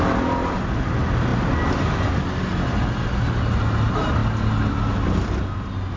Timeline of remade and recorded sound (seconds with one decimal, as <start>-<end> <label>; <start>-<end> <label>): 0.0-6.0 recorded

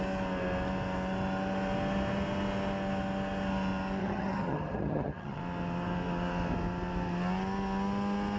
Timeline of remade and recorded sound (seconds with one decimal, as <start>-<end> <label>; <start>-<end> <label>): 0.0-4.0 recorded; 4.0-5.4 remade; 5.4-8.4 recorded